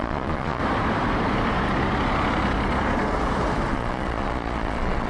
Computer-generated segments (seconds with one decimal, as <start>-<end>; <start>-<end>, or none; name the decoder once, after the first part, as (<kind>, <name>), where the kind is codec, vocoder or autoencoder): 0.0-0.6 (vocoder, Vocos); 3.7-5.1